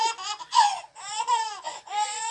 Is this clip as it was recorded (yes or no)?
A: no